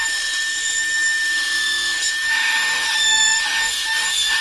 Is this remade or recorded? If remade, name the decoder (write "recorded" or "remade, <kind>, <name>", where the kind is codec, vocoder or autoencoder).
remade, autoencoder, DAC-VAE